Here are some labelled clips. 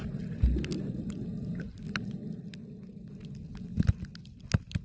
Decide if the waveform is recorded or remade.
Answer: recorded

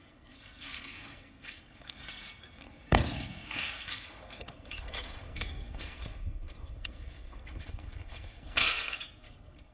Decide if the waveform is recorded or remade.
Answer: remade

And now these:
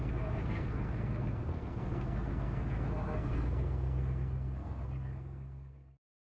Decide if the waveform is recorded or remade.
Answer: remade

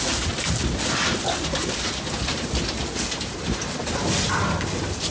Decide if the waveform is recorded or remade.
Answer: recorded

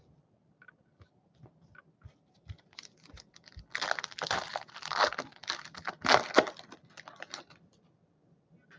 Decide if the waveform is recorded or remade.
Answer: recorded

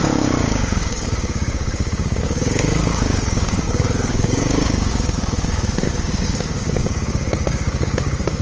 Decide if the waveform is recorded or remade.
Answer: remade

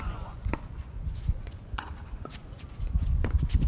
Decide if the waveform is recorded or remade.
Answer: remade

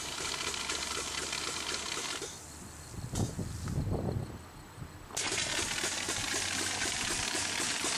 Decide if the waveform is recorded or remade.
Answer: recorded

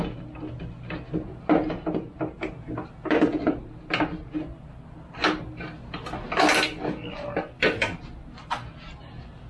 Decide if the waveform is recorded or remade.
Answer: recorded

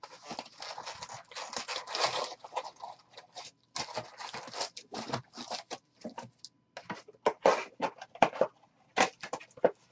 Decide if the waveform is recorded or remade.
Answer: recorded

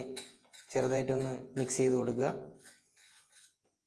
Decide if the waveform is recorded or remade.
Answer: remade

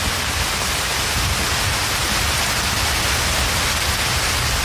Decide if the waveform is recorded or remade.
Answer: recorded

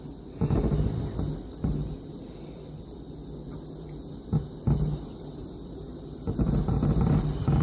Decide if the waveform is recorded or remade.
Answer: recorded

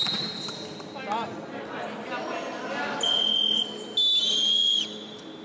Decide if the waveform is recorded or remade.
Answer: recorded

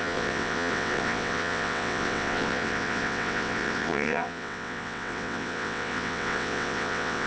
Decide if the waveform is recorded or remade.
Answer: remade